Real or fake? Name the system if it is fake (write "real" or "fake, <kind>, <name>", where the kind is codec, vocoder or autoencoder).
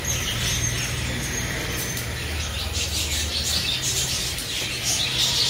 real